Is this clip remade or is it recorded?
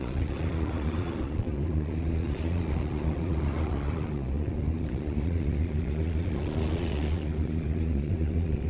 remade